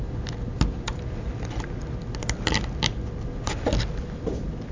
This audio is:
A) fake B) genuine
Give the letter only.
B